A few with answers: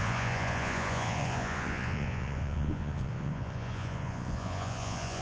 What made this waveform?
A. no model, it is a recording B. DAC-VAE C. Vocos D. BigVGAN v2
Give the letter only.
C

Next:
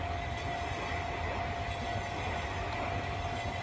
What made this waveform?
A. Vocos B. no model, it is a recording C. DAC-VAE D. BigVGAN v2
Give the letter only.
B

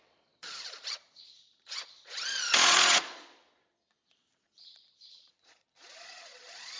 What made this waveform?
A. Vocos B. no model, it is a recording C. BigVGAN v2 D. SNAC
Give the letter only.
A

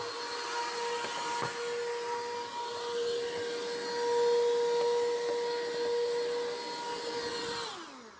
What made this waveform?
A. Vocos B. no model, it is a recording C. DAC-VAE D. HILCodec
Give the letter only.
B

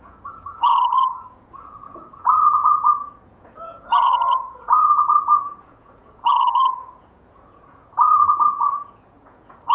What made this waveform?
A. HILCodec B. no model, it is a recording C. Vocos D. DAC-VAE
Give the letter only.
C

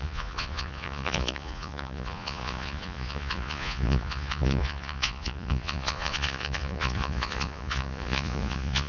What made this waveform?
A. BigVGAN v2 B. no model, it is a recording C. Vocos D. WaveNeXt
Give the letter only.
C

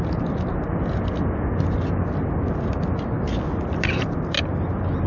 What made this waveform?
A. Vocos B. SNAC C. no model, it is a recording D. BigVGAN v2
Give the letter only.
C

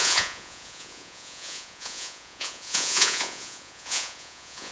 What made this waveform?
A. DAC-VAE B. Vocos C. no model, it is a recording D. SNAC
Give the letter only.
B